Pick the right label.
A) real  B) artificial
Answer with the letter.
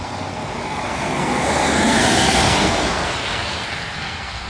B